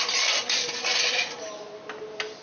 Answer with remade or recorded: recorded